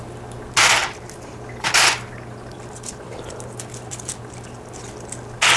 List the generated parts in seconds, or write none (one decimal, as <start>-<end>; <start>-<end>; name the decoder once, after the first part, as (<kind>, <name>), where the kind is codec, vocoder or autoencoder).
none